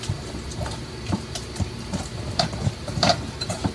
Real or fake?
fake